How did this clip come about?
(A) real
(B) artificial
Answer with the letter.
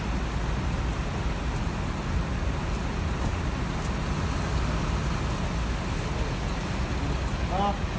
A